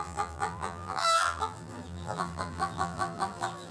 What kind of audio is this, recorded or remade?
remade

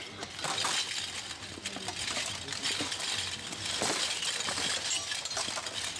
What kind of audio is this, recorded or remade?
recorded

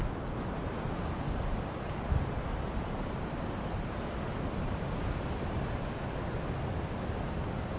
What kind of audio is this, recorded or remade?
recorded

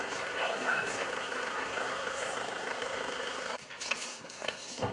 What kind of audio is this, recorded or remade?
remade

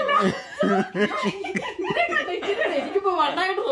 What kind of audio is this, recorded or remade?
remade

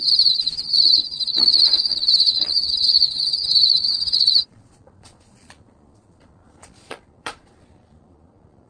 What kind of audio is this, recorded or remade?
remade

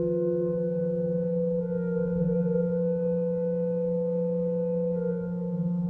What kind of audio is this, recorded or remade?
remade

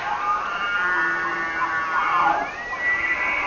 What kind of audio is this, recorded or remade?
recorded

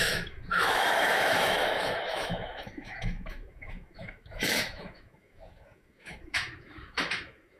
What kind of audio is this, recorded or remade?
remade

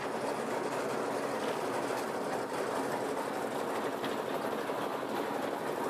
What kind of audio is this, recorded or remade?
recorded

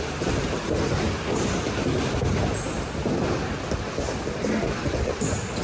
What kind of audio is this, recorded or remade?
recorded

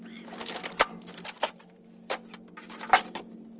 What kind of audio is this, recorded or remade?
recorded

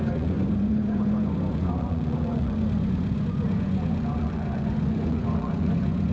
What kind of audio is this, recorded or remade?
remade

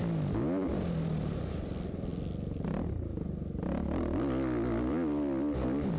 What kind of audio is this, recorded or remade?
recorded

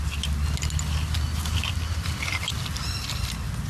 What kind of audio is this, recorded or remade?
recorded